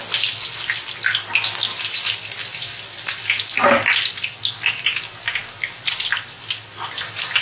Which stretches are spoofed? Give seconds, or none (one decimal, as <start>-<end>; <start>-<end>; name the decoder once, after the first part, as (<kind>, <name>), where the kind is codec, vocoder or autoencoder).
none